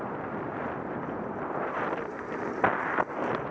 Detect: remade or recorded recorded